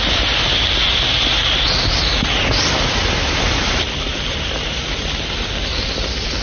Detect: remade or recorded recorded